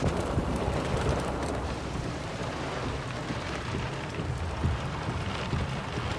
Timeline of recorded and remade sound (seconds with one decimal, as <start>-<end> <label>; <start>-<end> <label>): 0.0-2.4 remade; 2.4-6.2 recorded